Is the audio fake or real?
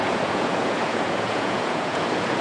fake